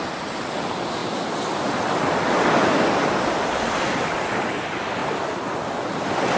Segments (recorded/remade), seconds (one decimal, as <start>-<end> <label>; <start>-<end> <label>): 0.0-6.4 recorded

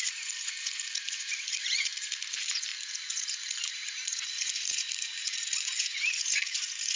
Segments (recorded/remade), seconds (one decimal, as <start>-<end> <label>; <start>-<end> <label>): 0.0-7.0 remade

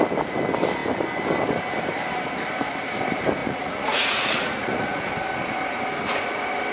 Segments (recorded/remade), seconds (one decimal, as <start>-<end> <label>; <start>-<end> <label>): 0.0-3.4 recorded; 3.4-5.1 remade; 5.1-6.7 recorded

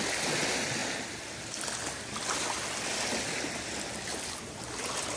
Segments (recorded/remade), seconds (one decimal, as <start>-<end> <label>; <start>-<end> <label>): 0.0-5.2 recorded

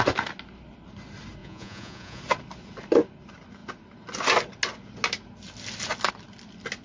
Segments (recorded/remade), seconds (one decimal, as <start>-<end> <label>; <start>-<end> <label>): 0.0-1.4 recorded; 1.4-2.2 remade; 2.2-6.8 recorded

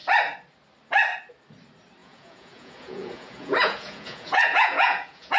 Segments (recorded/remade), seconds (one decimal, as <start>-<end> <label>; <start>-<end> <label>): 0.0-2.0 recorded; 2.0-5.4 remade

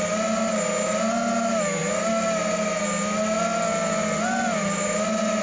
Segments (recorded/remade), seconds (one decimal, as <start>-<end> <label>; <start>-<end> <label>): 0.0-5.4 recorded

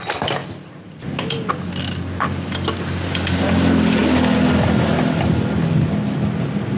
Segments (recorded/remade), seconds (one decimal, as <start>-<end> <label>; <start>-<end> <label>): 0.0-6.8 recorded